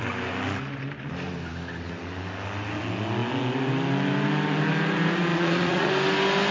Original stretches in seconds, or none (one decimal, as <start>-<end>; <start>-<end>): 0.0-5.3; 5.9-6.5